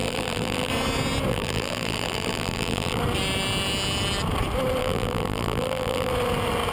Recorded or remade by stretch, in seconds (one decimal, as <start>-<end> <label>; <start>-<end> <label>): 0.0-0.7 remade; 0.7-1.3 recorded; 1.3-3.0 remade; 3.0-4.8 recorded; 4.8-6.1 remade; 6.1-6.7 recorded